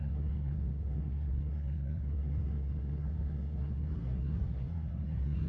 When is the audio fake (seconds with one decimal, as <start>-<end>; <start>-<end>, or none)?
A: 0.0-5.5